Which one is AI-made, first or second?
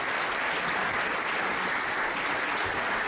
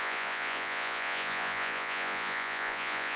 second